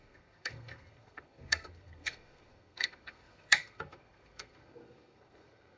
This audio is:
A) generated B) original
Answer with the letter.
A